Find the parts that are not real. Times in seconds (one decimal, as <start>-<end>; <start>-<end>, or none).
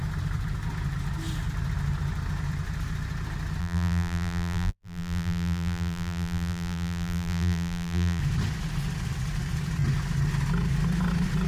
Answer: 3.6-8.2